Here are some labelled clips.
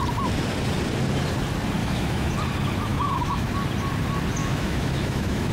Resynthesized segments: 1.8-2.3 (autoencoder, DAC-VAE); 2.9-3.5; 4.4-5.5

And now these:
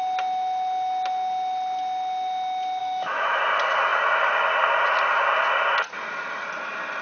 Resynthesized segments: 2.8-3.4 (autoencoder, DAC-VAE)

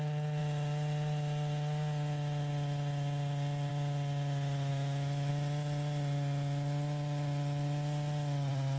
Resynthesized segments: 4.7-5.3 (autoencoder, DAC-VAE)

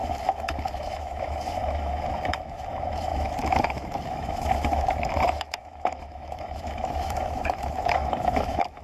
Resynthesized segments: 0.0-8.8 (autoencoder, DAC-VAE)

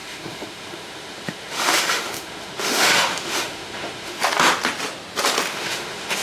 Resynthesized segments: 0.0-4.2 (autoencoder, DAC-VAE); 5.5-6.2

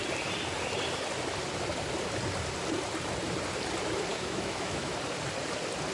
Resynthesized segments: 4.1-4.9 (autoencoder, DAC-VAE)